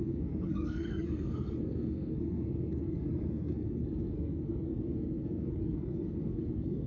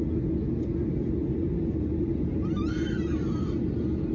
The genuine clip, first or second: second